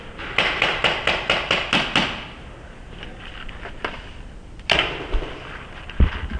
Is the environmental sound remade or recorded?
recorded